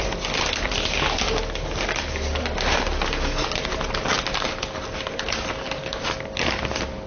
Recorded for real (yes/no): yes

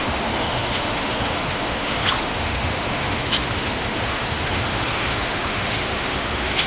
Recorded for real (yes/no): no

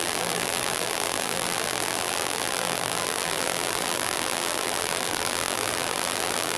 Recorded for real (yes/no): no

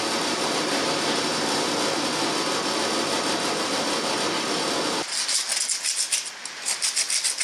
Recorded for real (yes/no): yes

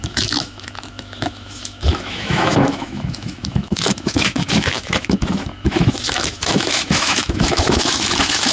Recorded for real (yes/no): no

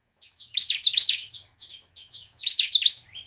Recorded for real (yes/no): no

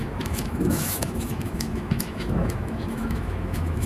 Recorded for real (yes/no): no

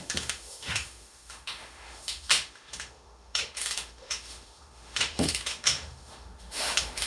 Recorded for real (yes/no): no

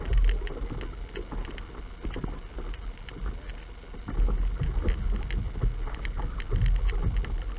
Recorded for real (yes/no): yes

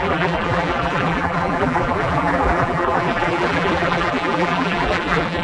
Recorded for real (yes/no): no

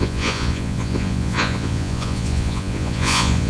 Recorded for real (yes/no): no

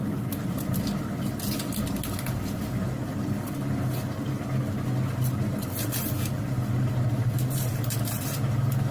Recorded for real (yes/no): yes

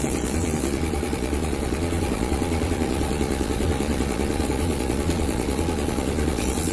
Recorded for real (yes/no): no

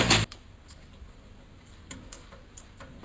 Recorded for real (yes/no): yes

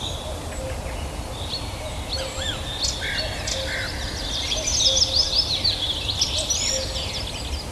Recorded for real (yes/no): yes